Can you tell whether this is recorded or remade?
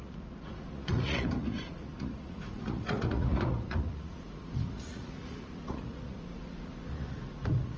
remade